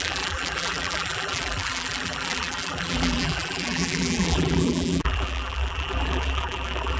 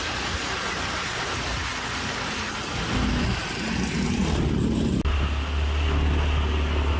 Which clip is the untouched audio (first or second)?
second